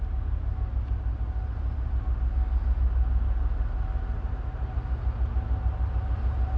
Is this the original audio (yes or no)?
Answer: yes